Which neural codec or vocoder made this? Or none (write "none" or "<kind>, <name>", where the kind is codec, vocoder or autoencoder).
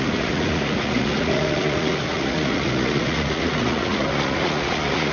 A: vocoder, Vocos